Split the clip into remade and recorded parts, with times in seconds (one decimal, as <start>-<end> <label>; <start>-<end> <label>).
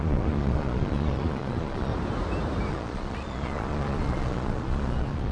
0.0-1.9 remade; 1.9-2.7 recorded; 2.7-5.3 remade